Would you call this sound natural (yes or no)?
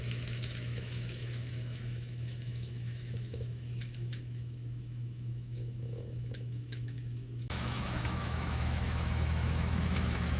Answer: no